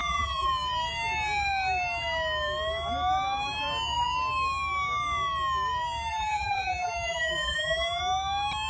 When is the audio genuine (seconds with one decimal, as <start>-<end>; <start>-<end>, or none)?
0.5-6.1; 8.0-8.7